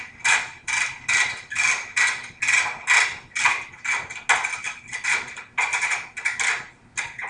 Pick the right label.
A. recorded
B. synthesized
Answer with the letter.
A